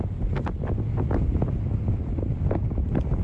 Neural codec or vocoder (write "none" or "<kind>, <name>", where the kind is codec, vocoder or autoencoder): none